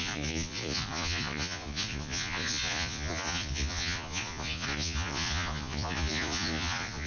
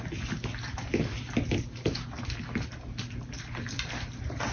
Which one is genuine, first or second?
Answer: second